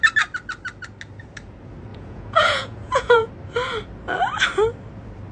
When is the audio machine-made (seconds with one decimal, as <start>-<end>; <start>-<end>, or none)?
1.9-3.3